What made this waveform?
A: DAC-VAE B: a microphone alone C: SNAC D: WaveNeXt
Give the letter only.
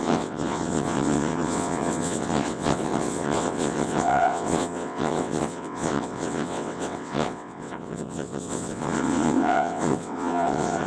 D